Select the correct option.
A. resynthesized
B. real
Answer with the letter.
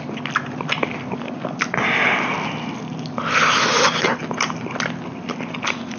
B